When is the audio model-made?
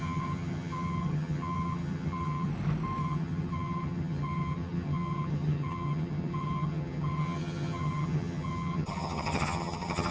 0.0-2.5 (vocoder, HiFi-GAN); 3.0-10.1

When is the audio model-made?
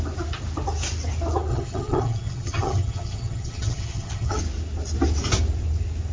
1.5-4.4 (vocoder, HiFi-GAN)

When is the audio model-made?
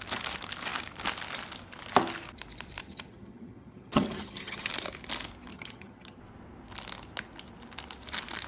2.8-4.7 (vocoder, HiFi-GAN); 5.5-6.2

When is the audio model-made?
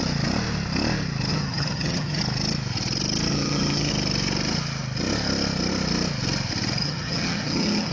1.3-2.2 (vocoder, HiFi-GAN); 3.3-3.9; 6.8-7.9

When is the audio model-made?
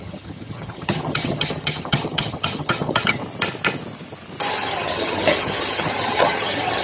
0.0-3.2 (vocoder, HiFi-GAN); 4.5-6.8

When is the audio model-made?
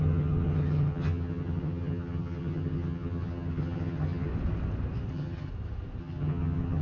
0.0-4.3 (vocoder, HiFi-GAN); 5.1-5.5; 6.0-6.8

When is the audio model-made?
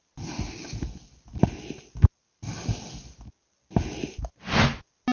none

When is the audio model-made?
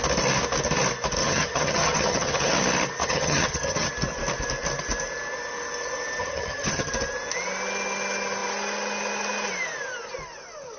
1.2-2.5 (vocoder, HiFi-GAN); 3.0-3.9; 6.2-6.9